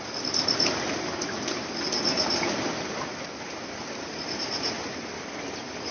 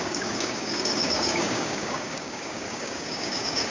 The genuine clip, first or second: first